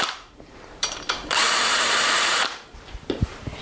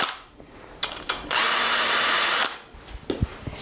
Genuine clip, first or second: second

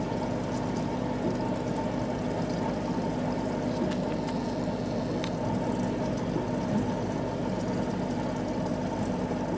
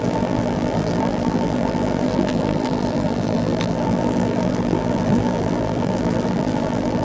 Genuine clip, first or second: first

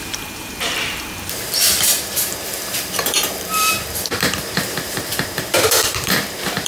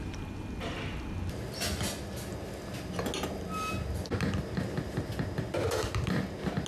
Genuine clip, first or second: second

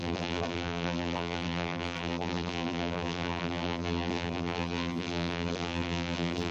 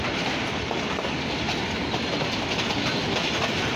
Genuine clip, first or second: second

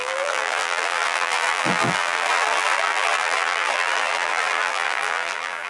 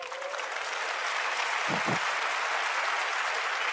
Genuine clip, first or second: second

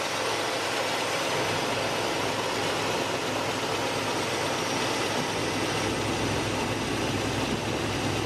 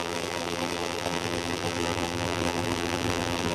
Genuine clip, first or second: first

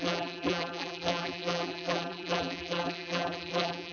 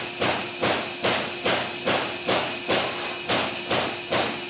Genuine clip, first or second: second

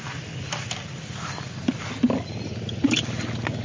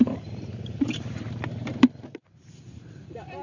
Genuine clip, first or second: first